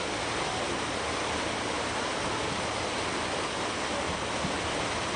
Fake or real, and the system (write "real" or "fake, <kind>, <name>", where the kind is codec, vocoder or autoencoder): real